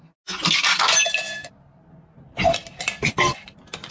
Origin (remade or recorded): recorded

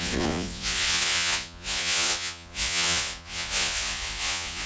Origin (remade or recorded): remade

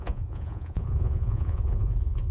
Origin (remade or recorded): remade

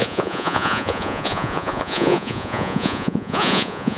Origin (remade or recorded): remade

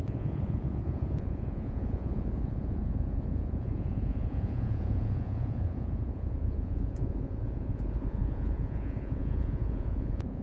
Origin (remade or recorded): remade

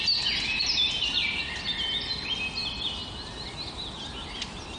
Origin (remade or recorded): recorded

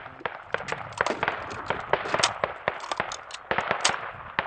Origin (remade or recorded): recorded